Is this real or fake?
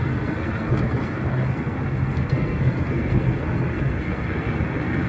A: fake